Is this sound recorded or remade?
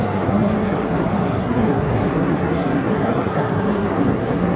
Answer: remade